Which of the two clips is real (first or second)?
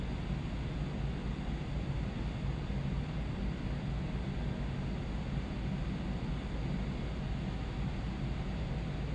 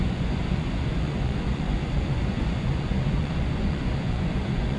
first